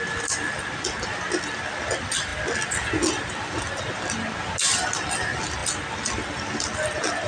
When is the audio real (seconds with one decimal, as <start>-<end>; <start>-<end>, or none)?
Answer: 0.0-7.3